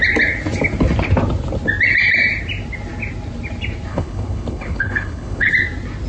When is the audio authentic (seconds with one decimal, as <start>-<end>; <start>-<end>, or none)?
0.0-3.9; 5.5-6.1